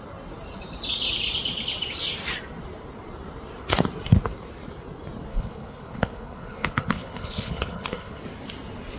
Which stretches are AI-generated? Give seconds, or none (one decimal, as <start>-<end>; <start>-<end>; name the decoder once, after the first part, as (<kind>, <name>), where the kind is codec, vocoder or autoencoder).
5.3-8.2 (codec, HILCodec)